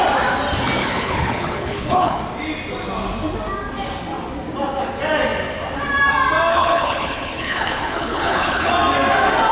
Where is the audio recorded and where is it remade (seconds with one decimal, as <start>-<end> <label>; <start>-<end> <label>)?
0.0-0.8 recorded; 0.8-2.2 remade; 2.2-6.5 recorded; 6.5-8.7 remade; 8.7-9.5 recorded